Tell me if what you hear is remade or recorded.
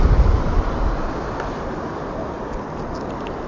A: recorded